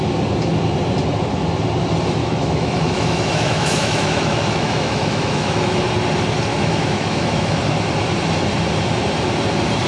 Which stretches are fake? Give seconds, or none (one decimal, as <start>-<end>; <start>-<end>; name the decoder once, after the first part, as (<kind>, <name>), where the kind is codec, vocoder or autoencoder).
2.2-5.8 (autoencoder, DAC-VAE); 6.5-7.6